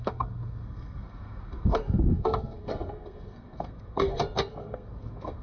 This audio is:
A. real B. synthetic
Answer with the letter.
B